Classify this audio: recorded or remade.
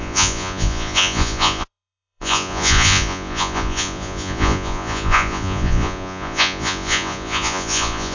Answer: remade